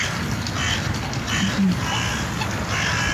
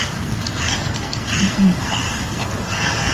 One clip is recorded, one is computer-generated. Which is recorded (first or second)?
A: first